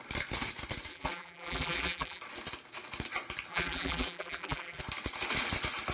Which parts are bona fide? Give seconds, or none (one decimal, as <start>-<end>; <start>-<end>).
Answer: 0.0-0.9; 2.2-3.5; 4.8-5.9